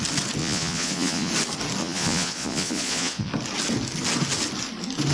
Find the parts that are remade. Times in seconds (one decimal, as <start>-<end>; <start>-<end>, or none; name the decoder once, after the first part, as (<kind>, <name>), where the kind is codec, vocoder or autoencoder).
0.4-1.3 (vocoder, Vocos); 1.8-3.3